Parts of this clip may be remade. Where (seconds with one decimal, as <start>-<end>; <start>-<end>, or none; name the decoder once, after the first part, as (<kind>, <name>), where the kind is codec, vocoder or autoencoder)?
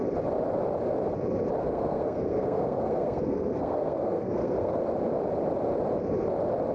1.6-4.8 (codec, SNAC)